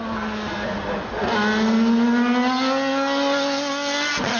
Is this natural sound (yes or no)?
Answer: yes